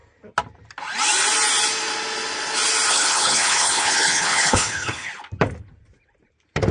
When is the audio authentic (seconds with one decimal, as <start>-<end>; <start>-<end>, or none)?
0.0-2.9; 5.1-6.7